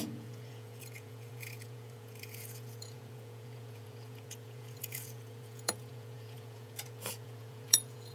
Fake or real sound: fake